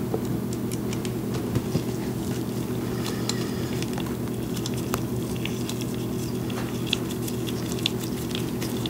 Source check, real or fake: real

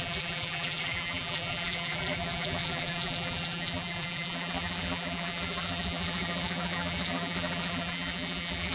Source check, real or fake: fake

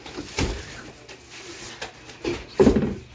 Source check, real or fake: real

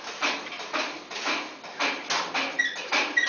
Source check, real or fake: real